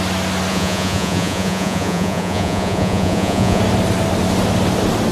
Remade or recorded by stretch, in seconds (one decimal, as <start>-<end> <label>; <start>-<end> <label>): 0.0-0.5 recorded; 0.5-3.6 remade; 3.6-5.1 recorded